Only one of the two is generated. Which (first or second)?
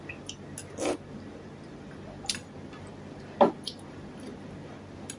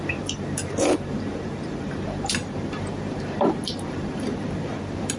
second